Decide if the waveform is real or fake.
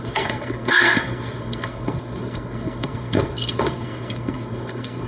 fake